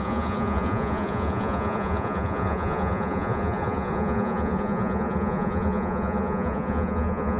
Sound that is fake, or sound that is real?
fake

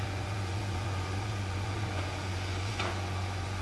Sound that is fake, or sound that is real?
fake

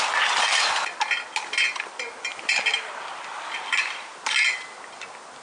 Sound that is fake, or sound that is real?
real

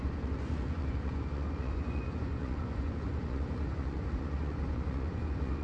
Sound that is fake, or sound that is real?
fake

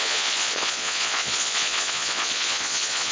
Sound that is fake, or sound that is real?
fake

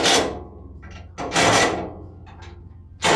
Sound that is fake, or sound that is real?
real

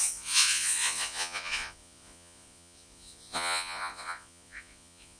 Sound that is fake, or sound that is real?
fake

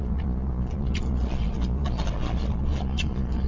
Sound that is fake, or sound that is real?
fake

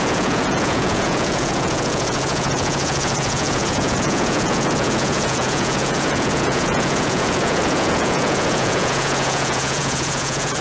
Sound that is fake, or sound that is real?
fake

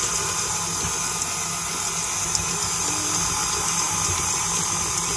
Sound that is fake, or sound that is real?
real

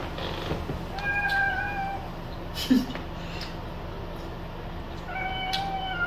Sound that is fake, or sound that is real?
real